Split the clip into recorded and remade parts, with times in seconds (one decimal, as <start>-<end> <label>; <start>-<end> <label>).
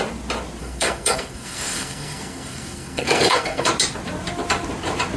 0.0-0.6 recorded; 0.6-3.7 remade; 3.7-5.2 recorded